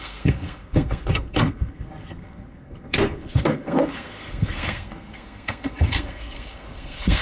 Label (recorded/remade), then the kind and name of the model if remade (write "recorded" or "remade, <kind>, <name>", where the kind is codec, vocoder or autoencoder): remade, codec, SNAC